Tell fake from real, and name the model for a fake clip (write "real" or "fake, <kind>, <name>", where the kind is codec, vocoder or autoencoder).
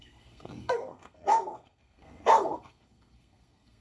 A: fake, codec, SNAC